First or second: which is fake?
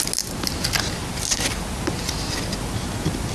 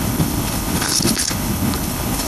second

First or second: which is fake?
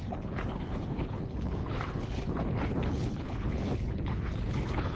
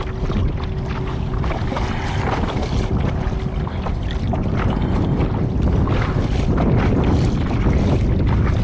first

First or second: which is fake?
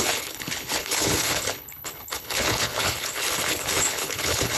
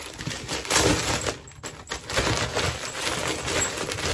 first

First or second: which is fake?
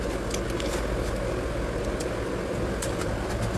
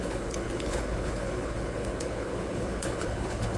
second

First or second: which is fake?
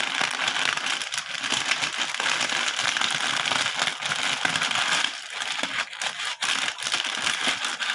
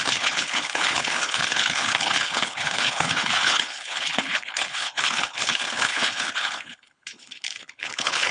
second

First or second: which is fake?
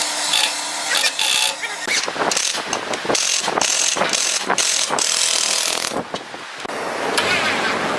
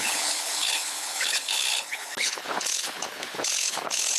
second